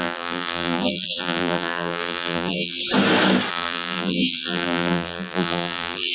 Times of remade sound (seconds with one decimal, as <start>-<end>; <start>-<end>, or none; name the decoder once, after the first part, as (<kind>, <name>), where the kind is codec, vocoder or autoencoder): 0.0-2.8 (vocoder, BigVGAN v2); 3.5-6.1